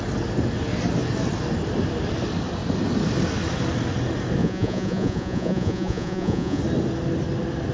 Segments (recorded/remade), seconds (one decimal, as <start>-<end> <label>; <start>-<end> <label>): 0.0-4.4 recorded; 4.4-6.6 remade; 6.6-7.7 recorded

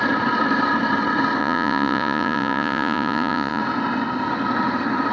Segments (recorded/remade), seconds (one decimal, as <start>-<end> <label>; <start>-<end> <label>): 0.0-1.4 recorded; 1.4-3.6 remade; 3.6-5.1 recorded